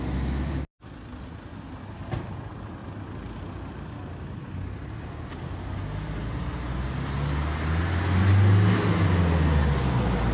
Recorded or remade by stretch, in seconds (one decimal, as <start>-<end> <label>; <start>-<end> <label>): 0.0-10.3 recorded